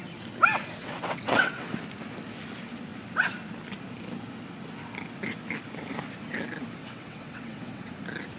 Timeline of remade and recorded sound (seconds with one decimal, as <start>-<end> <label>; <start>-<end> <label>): 0.0-0.8 recorded; 0.8-1.7 remade; 1.7-6.8 recorded; 6.8-7.9 remade; 7.9-8.4 recorded